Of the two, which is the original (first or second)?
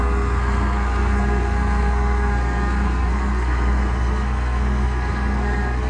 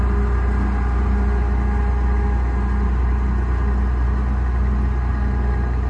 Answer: second